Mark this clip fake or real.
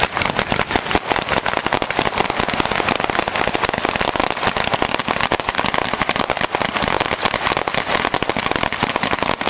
real